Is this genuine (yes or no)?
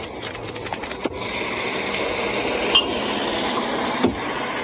yes